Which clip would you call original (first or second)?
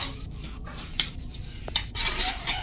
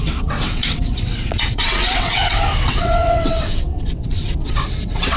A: first